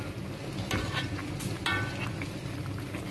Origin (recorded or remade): recorded